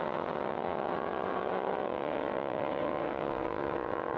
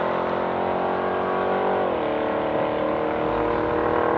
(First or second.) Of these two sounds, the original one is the second